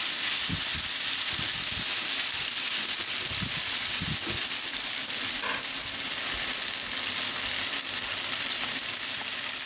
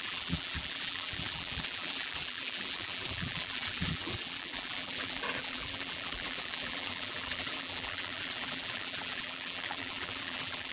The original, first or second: first